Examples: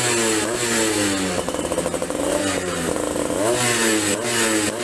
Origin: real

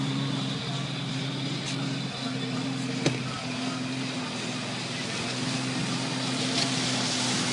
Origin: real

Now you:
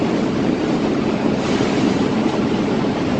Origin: fake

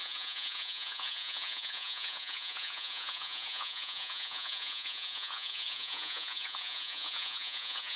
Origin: fake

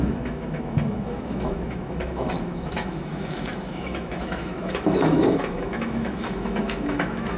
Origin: fake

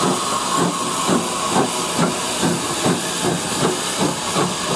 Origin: real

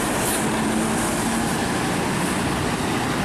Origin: real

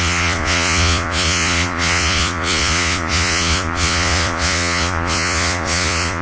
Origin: fake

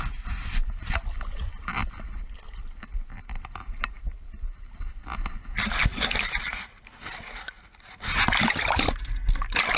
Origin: real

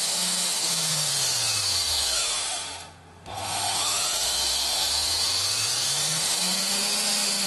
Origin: fake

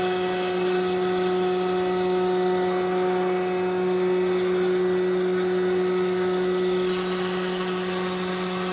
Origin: real